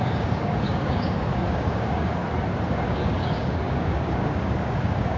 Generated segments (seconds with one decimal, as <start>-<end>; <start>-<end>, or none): 0.0-2.2; 2.7-5.2